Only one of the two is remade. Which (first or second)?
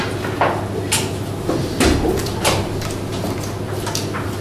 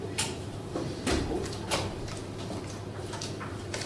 second